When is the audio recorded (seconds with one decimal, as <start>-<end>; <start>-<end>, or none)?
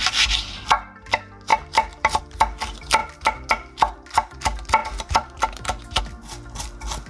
0.0-1.5; 2.2-3.0; 3.5-4.8; 6.0-7.1